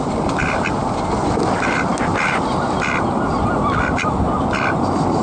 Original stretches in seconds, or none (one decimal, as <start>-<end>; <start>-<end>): 0.0-5.2